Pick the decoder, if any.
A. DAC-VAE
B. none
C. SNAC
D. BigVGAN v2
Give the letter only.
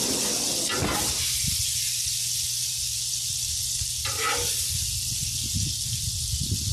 B